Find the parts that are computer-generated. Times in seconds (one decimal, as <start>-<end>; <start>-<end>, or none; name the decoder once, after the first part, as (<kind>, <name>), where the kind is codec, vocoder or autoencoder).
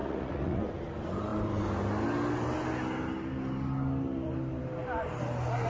0.0-0.6 (vocoder, Vocos)